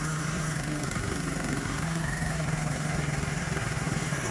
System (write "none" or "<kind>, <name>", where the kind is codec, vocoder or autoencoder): codec, SNAC